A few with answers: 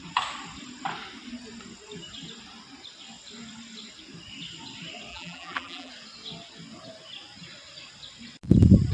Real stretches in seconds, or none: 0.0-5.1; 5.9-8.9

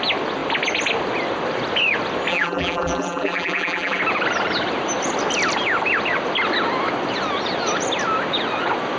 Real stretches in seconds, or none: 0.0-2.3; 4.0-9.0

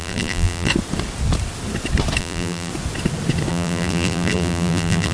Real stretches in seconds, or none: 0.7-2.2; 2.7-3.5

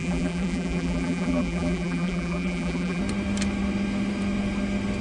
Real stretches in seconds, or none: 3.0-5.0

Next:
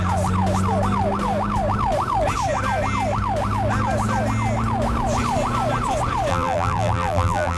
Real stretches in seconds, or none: 0.0-6.3

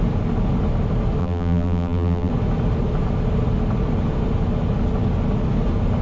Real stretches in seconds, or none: 0.0-1.2; 2.3-6.0

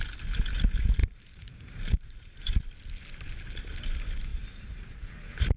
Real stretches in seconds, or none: 0.0-1.0; 2.7-4.3; 5.0-5.6